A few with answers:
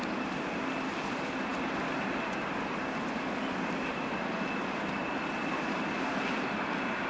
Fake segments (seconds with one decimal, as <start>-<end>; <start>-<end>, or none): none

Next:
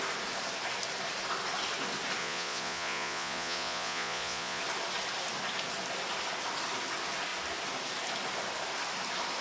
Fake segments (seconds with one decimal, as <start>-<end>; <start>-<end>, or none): 2.2-4.6

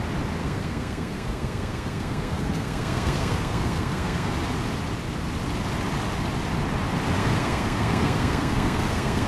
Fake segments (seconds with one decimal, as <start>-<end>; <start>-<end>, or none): 0.4-4.3; 7.2-9.3

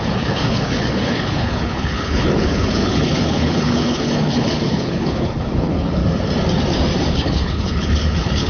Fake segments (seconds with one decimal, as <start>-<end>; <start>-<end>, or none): 0.0-6.0; 7.1-8.5

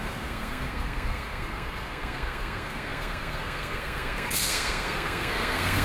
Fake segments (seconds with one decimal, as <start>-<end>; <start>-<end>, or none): 0.0-5.8

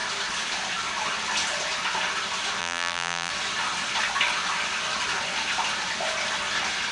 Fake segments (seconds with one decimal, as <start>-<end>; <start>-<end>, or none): 2.6-3.3